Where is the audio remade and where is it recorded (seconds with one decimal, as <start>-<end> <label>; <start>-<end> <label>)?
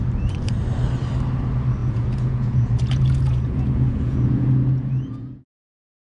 0.0-1.8 recorded; 1.8-5.5 remade; 5.5-6.1 recorded